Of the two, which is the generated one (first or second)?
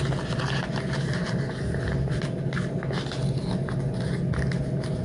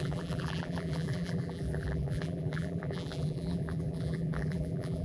second